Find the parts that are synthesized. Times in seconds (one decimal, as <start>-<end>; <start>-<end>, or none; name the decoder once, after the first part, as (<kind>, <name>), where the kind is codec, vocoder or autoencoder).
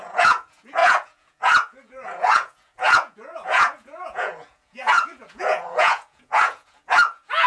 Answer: 0.0-7.5 (vocoder, Vocos)